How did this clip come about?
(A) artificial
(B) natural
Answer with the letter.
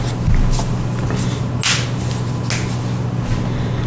B